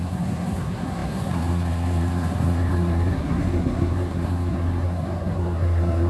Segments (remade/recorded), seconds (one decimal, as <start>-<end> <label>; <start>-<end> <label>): 0.0-6.1 remade